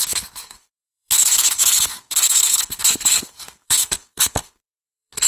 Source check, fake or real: fake